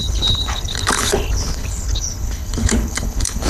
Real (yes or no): no